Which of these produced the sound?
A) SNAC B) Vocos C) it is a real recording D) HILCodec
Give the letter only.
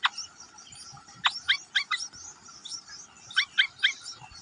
C